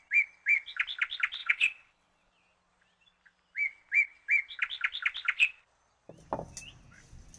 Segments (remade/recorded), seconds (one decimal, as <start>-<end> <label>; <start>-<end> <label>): 0.0-1.4 recorded; 1.4-2.3 remade; 2.3-7.4 recorded